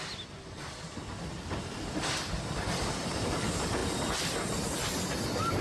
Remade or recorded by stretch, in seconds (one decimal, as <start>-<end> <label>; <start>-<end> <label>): 0.0-5.6 recorded